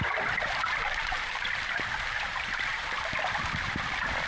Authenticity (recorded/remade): remade